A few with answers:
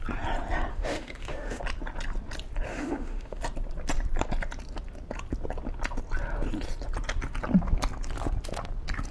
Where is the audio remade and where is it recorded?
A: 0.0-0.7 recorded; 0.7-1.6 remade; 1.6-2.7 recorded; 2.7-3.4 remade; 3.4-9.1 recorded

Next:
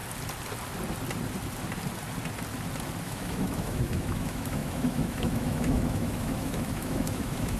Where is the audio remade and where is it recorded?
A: 0.0-3.0 recorded; 3.0-7.6 remade

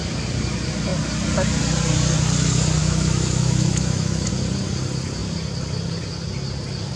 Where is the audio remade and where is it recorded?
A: 0.0-2.8 recorded; 2.8-4.3 remade; 4.3-7.0 recorded